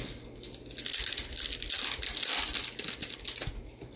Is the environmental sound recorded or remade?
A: recorded